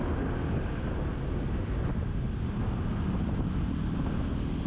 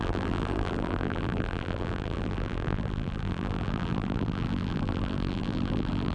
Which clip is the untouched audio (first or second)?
first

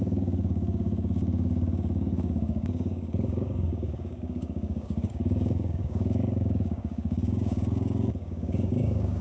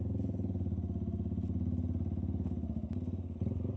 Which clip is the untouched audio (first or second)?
second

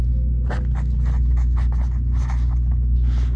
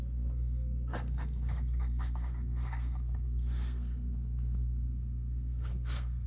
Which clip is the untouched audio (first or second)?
first